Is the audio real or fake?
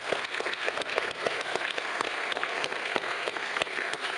fake